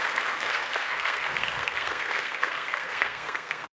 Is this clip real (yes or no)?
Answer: no